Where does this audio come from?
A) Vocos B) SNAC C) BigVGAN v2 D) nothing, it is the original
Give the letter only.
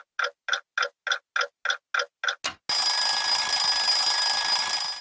D